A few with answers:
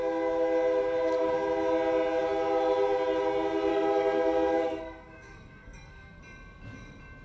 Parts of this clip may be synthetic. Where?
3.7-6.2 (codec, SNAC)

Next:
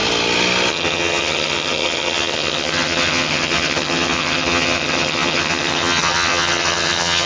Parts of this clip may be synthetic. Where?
0.7-7.3 (vocoder, HiFi-GAN)